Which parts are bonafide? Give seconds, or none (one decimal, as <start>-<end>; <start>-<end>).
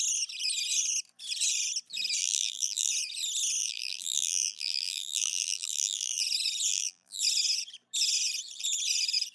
0.0-2.2; 2.9-3.6; 6.2-6.7; 7.2-9.3